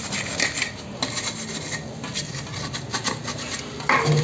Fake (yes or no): no